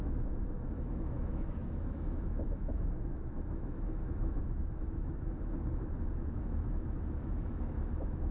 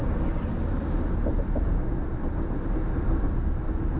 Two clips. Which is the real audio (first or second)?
second